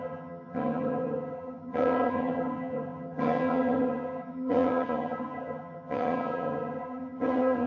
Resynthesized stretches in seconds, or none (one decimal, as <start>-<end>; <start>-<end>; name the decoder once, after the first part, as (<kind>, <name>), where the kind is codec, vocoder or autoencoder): 0.0-7.7 (vocoder, HiFi-GAN)